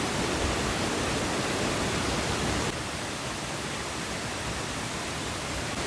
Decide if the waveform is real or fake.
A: real